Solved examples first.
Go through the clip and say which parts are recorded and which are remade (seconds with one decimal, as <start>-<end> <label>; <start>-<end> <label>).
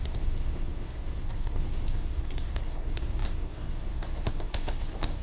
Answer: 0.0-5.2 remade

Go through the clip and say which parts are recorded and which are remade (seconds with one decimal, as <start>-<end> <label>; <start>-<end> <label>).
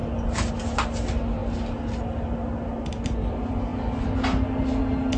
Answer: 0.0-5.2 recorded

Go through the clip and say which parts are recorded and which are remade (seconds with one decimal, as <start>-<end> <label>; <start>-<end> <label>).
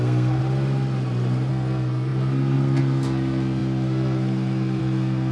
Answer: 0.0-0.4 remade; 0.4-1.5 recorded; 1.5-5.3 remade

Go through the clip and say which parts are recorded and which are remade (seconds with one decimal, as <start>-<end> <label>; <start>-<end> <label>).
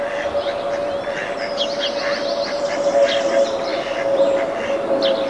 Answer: 0.0-5.3 recorded